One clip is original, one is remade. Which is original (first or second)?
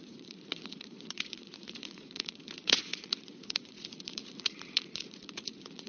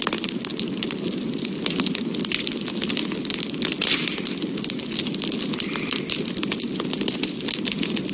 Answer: second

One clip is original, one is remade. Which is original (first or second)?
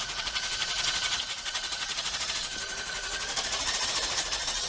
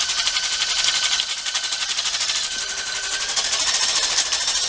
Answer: second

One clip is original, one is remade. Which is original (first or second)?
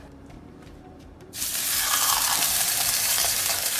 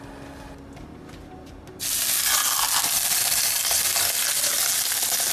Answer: second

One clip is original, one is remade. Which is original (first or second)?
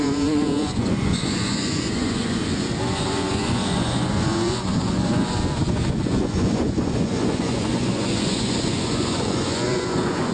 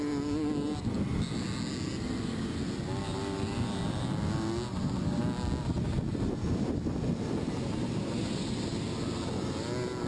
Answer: second